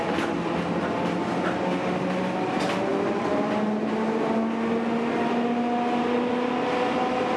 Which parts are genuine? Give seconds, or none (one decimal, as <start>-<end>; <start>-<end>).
0.0-7.4